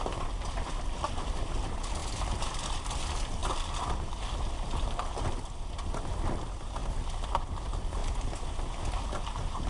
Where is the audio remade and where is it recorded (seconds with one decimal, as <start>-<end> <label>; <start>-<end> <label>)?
0.0-9.7 recorded